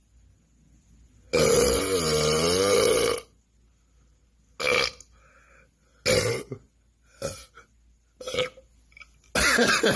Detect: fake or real real